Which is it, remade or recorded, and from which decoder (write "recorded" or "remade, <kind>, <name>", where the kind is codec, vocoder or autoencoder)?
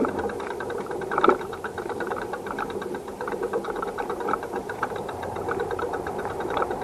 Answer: remade, vocoder, BigVGAN v2